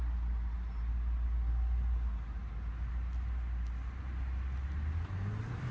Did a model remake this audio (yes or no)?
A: no